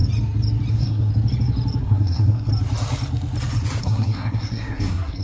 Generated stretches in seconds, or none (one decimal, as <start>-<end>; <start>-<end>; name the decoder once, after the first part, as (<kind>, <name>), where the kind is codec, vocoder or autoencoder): 0.7-1.1 (codec, SNAC); 1.8-2.5; 3.8-5.2